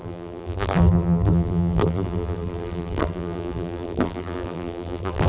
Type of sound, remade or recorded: remade